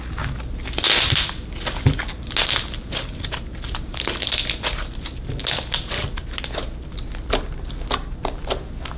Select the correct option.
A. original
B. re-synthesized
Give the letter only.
A